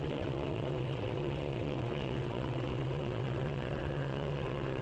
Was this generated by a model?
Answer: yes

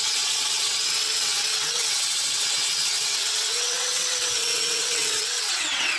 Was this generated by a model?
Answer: yes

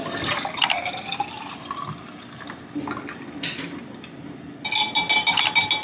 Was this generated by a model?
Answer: no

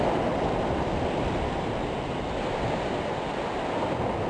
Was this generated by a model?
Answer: no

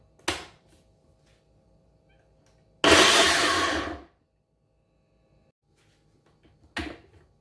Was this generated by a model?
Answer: no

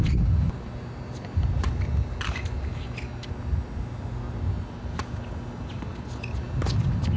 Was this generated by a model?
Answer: no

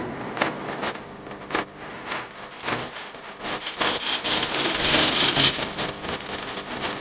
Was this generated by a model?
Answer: no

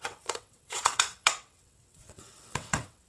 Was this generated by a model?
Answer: yes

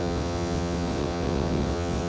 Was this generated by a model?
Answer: yes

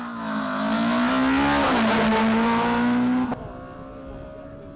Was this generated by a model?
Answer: no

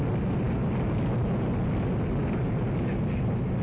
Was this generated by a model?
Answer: no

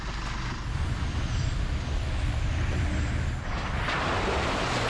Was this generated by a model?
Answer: no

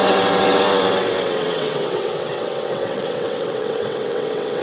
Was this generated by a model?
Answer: yes